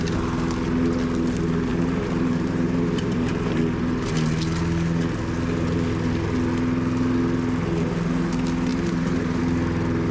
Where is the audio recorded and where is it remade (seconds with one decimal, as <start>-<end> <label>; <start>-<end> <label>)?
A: 0.0-1.7 recorded; 1.7-3.6 remade; 3.6-8.7 recorded; 8.7-9.4 remade; 9.4-10.1 recorded